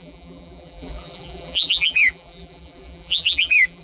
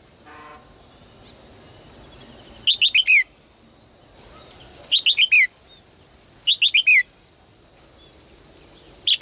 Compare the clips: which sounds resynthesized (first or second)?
first